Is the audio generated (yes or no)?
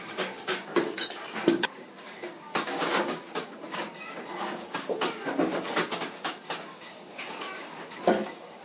yes